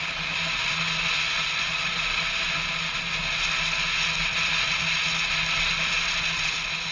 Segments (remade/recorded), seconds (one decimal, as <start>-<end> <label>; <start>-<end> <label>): 0.0-6.9 recorded